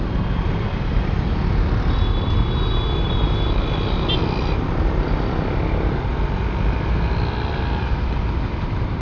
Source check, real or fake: real